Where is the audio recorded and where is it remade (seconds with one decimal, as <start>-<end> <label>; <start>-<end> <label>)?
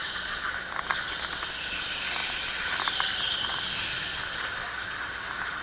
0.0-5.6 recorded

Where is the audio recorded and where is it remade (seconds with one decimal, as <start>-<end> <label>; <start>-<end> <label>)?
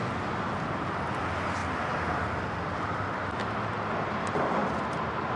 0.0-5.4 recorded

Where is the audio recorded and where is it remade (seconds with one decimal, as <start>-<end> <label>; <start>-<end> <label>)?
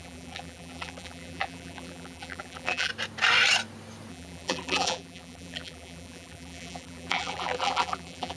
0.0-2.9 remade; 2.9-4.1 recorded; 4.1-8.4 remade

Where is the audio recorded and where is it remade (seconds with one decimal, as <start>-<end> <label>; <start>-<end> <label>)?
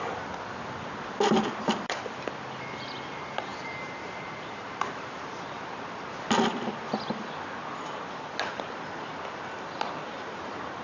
0.0-3.5 recorded; 3.5-5.2 remade; 5.2-10.8 recorded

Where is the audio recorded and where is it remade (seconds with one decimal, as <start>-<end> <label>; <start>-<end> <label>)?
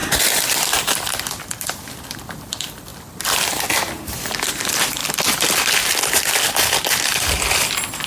0.0-1.8 recorded; 1.8-2.9 remade; 2.9-4.3 recorded; 4.3-5.0 remade; 5.0-6.2 recorded; 6.2-8.1 remade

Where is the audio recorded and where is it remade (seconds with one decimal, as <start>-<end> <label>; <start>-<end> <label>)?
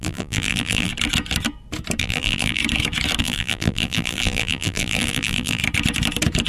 0.0-0.9 remade; 0.9-2.0 recorded; 2.0-2.6 remade; 2.6-3.2 recorded; 3.2-5.6 remade; 5.6-6.5 recorded